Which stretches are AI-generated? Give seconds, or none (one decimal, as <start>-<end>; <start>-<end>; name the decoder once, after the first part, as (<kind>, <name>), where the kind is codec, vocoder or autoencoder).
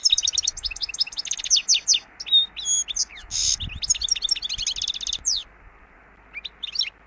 3.1-3.6 (autoencoder, DAC-VAE)